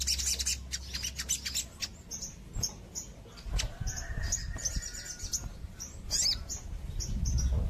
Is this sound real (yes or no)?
yes